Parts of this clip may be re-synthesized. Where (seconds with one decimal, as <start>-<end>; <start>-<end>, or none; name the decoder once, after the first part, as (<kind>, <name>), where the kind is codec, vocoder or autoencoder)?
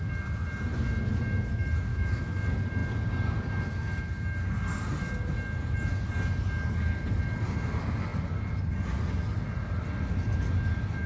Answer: 1.9-2.4 (autoencoder, DAC-VAE)